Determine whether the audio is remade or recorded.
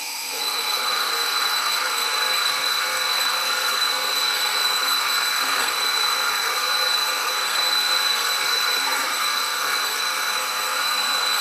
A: remade